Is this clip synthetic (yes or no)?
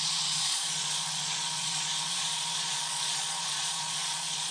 yes